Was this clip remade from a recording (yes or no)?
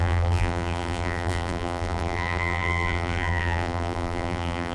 yes